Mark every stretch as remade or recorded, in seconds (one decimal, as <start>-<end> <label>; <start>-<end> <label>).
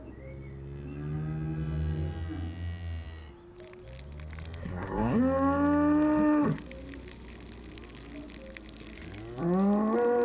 0.0-4.6 recorded; 4.6-5.2 remade; 5.2-10.2 recorded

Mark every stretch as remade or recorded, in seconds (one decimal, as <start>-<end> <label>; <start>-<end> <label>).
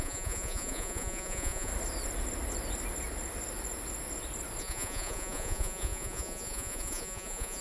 0.0-1.7 remade; 1.7-4.6 recorded; 4.6-7.6 remade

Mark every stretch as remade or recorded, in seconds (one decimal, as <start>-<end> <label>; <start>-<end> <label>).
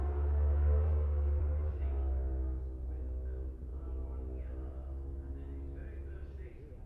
0.0-1.4 remade; 1.4-6.9 recorded